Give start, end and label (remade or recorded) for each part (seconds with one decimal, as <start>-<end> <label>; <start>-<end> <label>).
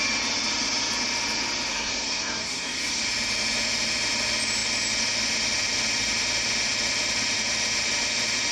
0.0-1.7 recorded; 1.7-3.0 remade; 3.0-8.5 recorded